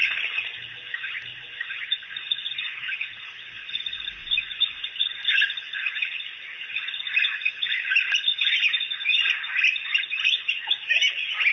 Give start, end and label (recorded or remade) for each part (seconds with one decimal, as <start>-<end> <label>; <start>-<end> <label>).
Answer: 0.0-1.3 recorded; 1.3-2.1 remade; 2.1-4.2 recorded; 4.2-5.4 remade; 5.4-11.5 recorded